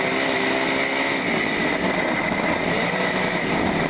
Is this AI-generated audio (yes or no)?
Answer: no